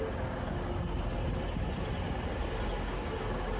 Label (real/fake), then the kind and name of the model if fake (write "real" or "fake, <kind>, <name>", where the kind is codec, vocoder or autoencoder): real